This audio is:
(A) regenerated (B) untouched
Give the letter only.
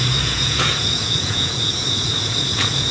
A